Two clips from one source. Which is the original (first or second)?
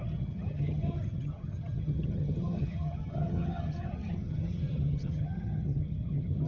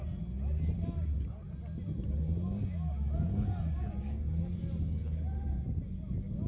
second